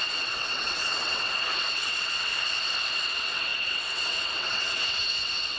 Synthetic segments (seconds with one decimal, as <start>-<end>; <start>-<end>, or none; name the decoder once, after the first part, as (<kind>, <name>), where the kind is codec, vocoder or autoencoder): 0.0-2.3 (vocoder, WaveNeXt); 2.9-5.6